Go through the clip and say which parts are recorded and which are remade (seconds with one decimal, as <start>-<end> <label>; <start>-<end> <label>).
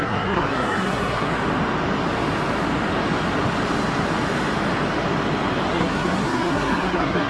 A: 0.0-1.3 remade; 1.3-5.7 recorded; 5.7-7.3 remade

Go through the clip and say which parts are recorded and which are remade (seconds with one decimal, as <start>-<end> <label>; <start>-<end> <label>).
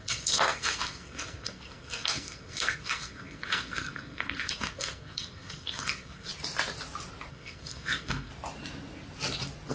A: 0.0-6.3 remade; 6.3-7.3 recorded; 7.3-8.3 remade; 8.3-9.7 recorded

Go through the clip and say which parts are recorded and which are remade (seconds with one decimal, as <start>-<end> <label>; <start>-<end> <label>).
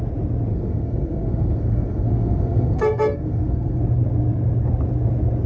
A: 0.0-0.5 recorded; 0.5-3.8 remade; 3.8-5.5 recorded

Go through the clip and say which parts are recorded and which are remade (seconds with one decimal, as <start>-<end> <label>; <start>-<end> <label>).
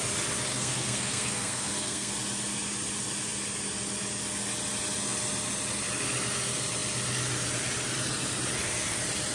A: 0.0-0.5 recorded; 0.5-2.1 remade; 2.1-9.3 recorded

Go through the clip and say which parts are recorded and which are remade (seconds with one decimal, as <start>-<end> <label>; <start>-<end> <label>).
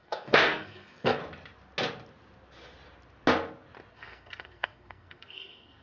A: 0.0-1.2 remade; 1.2-3.9 recorded; 3.9-5.8 remade